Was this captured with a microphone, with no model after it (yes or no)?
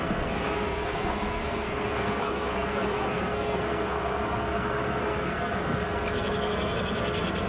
no